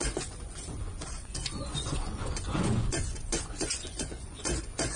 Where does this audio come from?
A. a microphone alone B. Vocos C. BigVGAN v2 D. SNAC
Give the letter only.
B